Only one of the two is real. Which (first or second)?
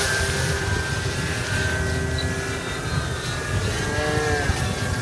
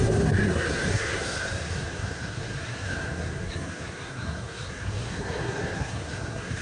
first